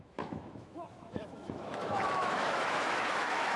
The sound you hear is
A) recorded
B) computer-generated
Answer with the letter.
B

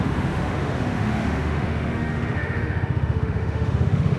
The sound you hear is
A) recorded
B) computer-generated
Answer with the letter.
B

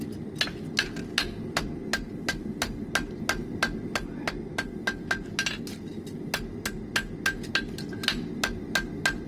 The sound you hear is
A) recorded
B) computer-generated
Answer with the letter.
A